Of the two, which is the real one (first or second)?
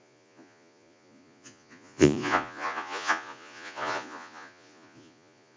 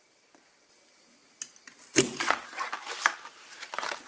second